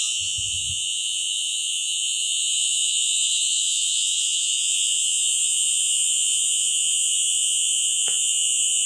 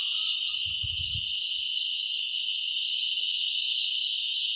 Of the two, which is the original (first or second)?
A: second